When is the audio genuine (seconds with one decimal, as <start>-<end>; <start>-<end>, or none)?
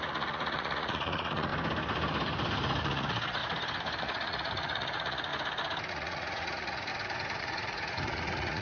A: 1.5-2.8; 3.4-4.0; 5.3-5.9; 6.9-7.4